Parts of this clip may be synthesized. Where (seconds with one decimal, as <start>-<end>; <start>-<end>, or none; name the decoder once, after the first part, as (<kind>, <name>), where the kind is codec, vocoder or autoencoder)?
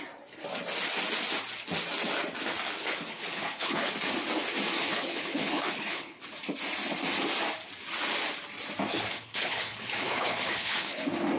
2.8-3.9 (codec, HILCodec); 4.8-6.2; 8.9-11.0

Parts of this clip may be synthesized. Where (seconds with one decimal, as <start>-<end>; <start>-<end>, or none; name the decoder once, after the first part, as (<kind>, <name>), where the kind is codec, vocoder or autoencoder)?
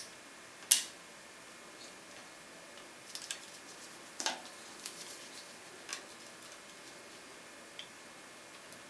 none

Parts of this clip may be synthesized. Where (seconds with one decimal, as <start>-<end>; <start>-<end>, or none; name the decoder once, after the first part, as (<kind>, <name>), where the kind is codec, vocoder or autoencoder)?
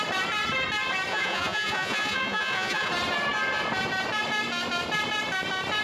1.1-2.9 (vocoder, Vocos)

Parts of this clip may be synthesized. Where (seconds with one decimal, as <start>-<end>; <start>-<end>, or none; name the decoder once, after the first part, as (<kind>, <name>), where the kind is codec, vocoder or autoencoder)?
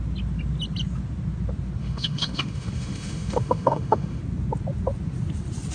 1.8-4.2 (autoencoder, DAC-VAE)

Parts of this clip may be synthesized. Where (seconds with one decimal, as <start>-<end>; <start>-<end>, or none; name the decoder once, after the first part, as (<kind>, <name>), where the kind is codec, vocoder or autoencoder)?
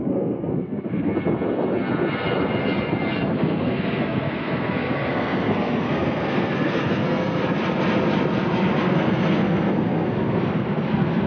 0.0-1.1 (codec, SNAC); 3.3-7.4; 8.8-11.3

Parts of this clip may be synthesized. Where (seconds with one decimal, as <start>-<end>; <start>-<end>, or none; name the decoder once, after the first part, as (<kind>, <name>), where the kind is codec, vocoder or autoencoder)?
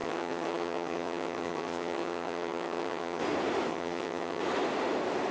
0.0-3.2 (vocoder, HiFi-GAN); 3.7-4.4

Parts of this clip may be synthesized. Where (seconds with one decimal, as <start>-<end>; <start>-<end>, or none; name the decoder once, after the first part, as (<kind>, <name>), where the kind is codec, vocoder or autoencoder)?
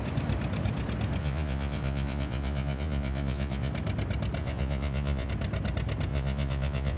1.2-3.7 (vocoder, Vocos); 4.4-5.3; 6.1-7.0